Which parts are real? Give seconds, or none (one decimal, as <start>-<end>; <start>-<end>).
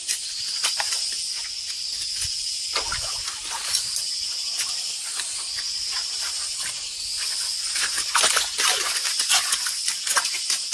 0.0-10.7